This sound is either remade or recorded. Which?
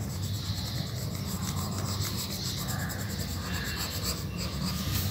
recorded